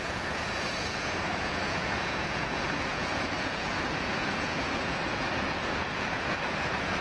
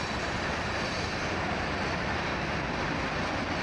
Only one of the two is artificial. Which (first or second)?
first